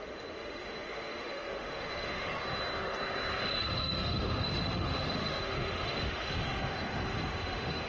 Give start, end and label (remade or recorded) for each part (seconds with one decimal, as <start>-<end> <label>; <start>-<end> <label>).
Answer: 0.0-2.3 remade; 2.3-3.6 recorded; 3.6-7.9 remade